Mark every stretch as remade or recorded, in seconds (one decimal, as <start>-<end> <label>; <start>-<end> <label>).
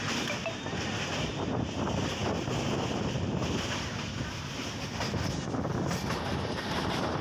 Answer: 0.0-7.2 recorded